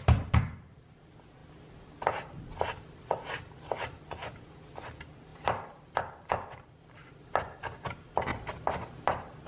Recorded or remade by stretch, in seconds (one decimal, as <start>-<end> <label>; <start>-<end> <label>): 0.0-5.3 recorded; 5.3-7.2 remade; 7.2-8.3 recorded; 8.3-9.5 remade